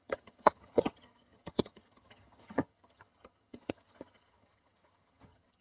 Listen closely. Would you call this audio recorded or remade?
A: remade